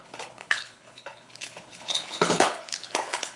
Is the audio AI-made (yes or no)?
yes